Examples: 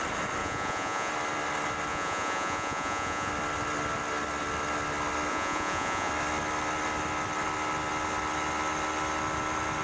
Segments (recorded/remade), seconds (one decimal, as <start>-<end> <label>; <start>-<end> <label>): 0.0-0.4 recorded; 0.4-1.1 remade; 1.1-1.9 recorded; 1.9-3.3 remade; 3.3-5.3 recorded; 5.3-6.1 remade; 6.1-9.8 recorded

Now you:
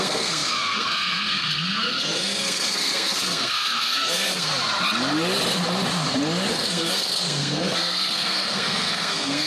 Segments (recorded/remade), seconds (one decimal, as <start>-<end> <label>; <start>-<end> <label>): 0.0-4.5 remade; 4.5-6.5 recorded; 6.5-9.5 remade

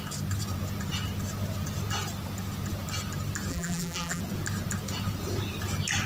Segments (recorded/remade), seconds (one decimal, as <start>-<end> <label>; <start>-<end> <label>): 0.0-3.5 recorded; 3.5-4.2 remade; 4.2-6.1 recorded